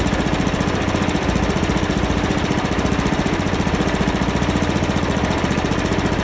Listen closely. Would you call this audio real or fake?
real